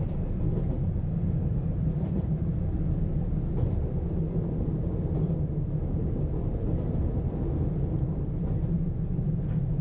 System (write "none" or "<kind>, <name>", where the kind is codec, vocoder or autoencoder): none